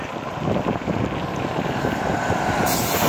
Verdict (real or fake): real